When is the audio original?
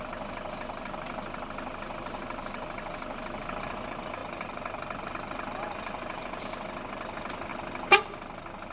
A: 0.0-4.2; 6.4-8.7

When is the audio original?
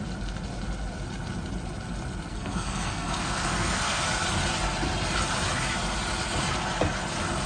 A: 0.0-2.3; 4.0-7.5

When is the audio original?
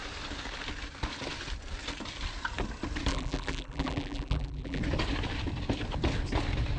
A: 0.0-3.1; 4.8-6.8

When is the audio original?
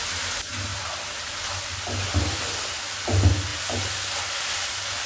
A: 0.0-5.1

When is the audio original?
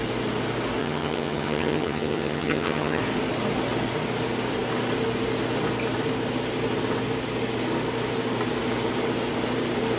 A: 0.0-0.8; 3.0-10.0